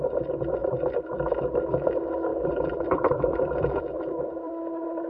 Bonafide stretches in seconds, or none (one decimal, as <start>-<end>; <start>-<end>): 0.0-0.6; 1.3-2.3; 4.5-5.1

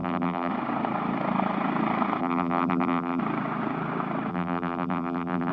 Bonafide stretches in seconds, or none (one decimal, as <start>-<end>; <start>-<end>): 0.5-2.2; 3.2-4.3

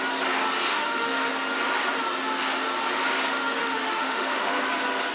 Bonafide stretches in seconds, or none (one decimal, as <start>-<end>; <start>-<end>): 0.0-0.7; 1.3-3.6; 4.5-5.1

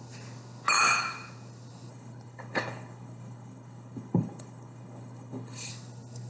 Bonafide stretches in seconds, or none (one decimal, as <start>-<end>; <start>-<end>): 0.0-1.9; 5.7-6.3